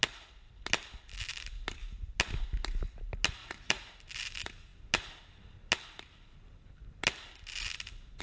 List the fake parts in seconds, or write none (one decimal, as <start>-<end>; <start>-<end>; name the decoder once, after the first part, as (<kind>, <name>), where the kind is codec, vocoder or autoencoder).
3.4-4.0 (vocoder, Vocos)